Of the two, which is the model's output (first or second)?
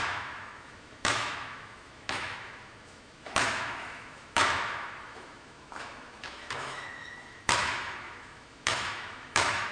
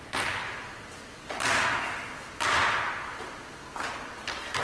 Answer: first